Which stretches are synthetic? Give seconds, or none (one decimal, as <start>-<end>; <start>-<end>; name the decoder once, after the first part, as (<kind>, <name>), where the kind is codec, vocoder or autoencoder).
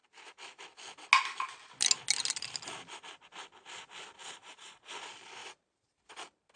4.2-4.9 (vocoder, BigVGAN v2); 5.4-6.6